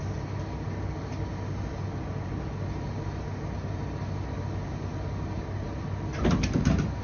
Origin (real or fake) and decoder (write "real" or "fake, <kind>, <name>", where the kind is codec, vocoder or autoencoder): real